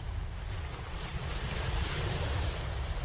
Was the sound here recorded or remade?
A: recorded